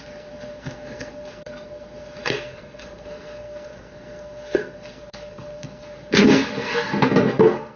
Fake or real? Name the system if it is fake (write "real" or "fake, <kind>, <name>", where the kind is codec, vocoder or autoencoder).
fake, codec, SNAC